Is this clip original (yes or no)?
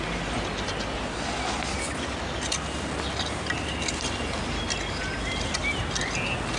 yes